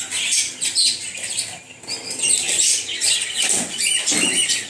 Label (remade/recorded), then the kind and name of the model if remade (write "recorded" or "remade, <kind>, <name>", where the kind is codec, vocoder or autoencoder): recorded